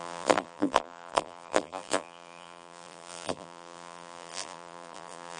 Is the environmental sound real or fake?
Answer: fake